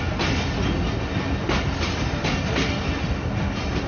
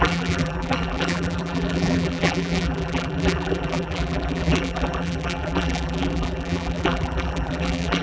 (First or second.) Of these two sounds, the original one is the first